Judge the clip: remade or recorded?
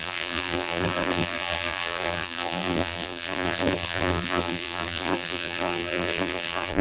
remade